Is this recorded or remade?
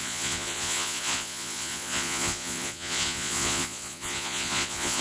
remade